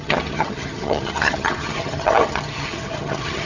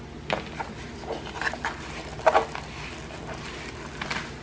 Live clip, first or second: second